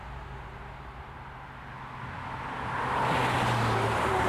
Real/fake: real